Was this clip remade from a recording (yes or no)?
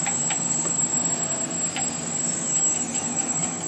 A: no